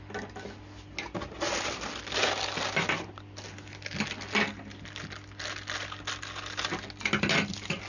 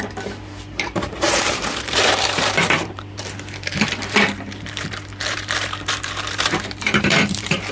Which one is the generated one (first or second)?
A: second